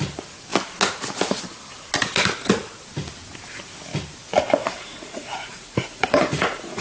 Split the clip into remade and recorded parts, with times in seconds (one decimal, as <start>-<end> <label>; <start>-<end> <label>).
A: 0.0-4.6 recorded; 4.6-6.8 remade